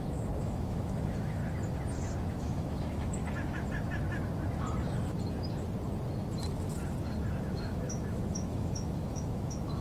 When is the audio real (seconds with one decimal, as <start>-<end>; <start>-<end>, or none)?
1.4-2.3; 3.2-7.4